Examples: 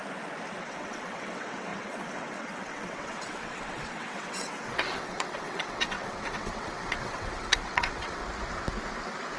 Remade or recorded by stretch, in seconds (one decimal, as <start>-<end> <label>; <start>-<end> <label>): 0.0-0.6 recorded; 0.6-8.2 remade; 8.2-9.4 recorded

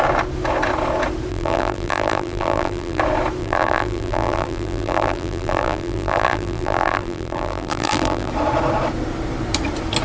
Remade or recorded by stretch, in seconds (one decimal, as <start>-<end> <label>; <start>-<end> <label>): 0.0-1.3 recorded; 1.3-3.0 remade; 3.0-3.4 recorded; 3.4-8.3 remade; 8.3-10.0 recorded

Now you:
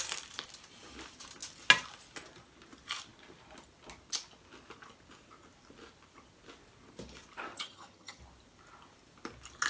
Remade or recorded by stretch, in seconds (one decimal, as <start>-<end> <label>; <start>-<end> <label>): 0.0-7.5 recorded; 7.5-8.2 remade; 8.2-9.7 recorded

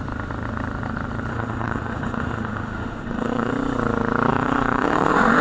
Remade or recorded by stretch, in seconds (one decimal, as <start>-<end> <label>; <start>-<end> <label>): 0.0-1.3 recorded; 1.3-3.5 remade; 3.5-4.3 recorded; 4.3-5.4 remade